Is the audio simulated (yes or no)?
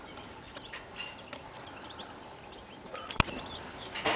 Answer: no